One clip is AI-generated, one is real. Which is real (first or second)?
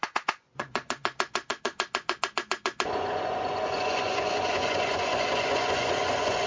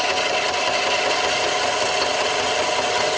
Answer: second